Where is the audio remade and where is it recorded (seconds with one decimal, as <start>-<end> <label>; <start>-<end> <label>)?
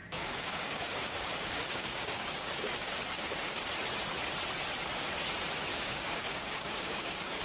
0.0-3.7 remade; 3.7-5.7 recorded; 5.7-7.4 remade